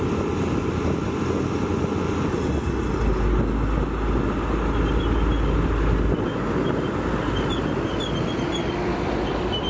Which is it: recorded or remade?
recorded